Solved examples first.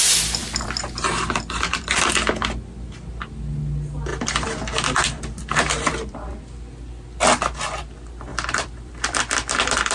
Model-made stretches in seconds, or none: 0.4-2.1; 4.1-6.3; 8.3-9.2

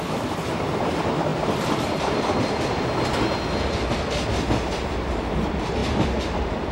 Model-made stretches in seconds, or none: none

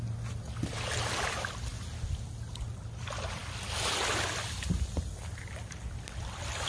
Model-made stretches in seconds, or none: none

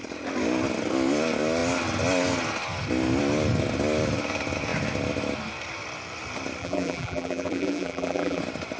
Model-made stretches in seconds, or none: 6.6-8.4